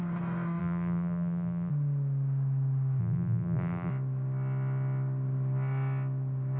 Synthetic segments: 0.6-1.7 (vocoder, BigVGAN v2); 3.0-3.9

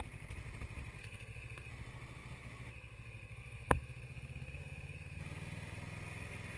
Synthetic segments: 1.0-1.7 (codec, SNAC); 2.7-5.2

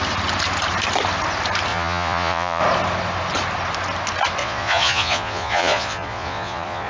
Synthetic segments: 1.7-2.6 (vocoder, Vocos); 4.4-6.9

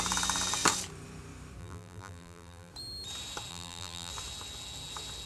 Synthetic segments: 1.6-2.7 (vocoder, BigVGAN v2); 3.5-4.1